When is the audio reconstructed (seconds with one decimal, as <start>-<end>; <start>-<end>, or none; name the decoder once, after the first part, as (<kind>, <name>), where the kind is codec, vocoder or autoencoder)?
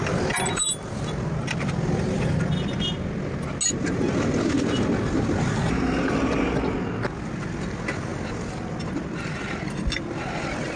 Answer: none